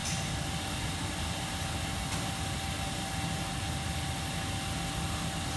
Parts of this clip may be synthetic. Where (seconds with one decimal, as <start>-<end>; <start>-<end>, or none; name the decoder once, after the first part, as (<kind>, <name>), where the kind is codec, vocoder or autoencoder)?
none